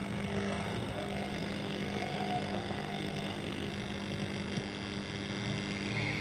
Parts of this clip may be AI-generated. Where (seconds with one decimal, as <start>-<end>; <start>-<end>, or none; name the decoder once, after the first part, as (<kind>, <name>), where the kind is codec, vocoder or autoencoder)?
0.0-3.7 (codec, SNAC)